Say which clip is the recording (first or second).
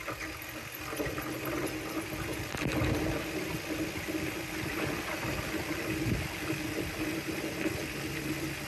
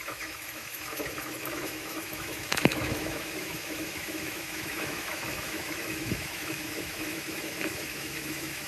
first